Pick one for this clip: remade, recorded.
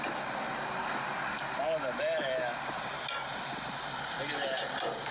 recorded